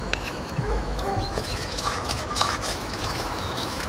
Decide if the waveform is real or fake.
fake